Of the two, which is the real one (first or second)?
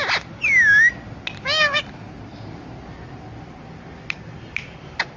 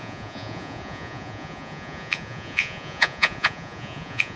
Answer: first